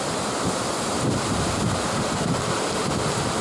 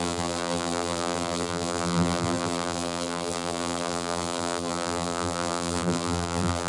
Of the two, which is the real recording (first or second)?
first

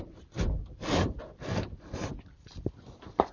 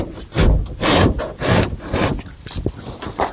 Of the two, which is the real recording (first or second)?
second